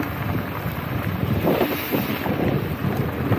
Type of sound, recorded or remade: recorded